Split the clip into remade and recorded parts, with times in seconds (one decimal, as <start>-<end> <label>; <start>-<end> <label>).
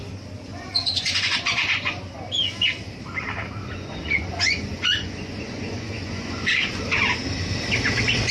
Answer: 0.0-0.5 recorded; 0.5-2.0 remade; 2.0-3.6 recorded; 3.6-6.8 remade; 6.8-8.3 recorded